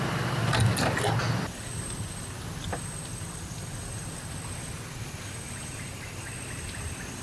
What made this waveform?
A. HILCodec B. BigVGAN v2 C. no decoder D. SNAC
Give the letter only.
C